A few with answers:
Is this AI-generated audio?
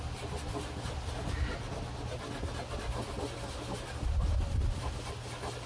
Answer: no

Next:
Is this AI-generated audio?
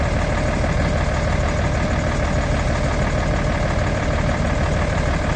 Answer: yes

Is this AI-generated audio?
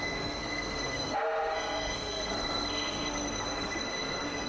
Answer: yes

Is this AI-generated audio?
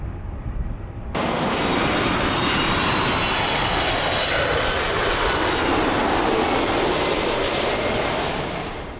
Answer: no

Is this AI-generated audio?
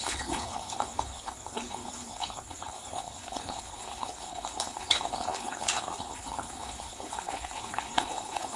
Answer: yes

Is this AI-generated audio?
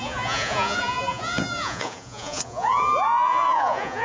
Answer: yes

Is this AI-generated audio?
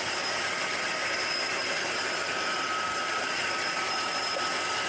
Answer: yes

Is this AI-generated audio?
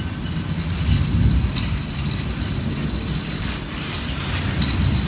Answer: no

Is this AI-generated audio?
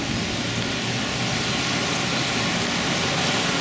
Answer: no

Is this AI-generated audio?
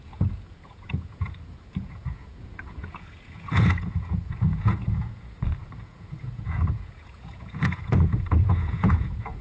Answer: yes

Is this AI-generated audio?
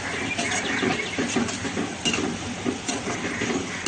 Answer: no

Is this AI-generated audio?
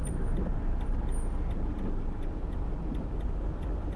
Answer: no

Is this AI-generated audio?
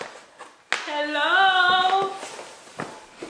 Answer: no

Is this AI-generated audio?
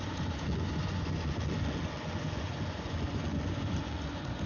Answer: yes